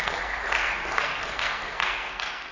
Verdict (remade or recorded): remade